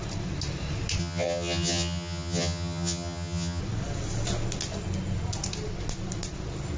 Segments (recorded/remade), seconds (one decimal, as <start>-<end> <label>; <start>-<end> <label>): 0.0-1.0 recorded; 1.0-3.6 remade; 3.6-6.8 recorded